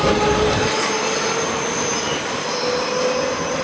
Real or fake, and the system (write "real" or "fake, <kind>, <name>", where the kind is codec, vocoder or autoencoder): real